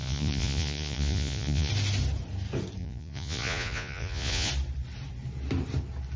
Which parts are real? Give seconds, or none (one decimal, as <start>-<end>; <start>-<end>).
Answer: 1.7-2.8; 4.5-6.2